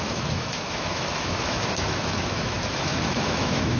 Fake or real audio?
fake